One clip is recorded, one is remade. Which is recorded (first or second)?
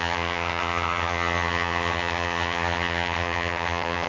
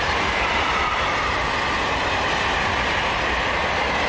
second